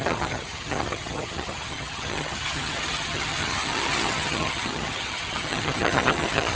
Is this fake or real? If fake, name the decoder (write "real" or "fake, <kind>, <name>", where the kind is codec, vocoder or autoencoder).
fake, vocoder, HiFi-GAN